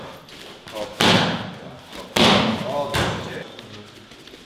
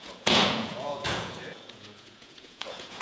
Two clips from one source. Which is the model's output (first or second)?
second